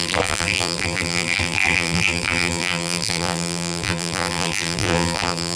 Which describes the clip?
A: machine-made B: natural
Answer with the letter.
A